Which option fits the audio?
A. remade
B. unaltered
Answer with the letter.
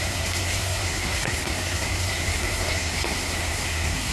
A